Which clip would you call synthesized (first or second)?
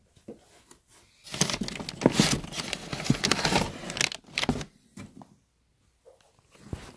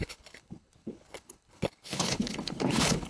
second